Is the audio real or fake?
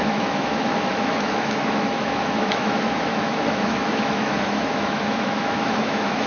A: fake